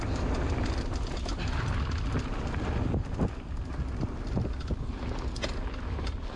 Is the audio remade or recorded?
recorded